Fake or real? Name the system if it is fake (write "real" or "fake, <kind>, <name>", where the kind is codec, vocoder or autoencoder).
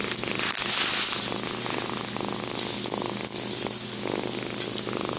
real